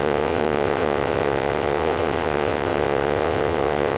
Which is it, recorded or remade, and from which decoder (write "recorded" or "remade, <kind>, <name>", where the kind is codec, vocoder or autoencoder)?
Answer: remade, vocoder, WaveNeXt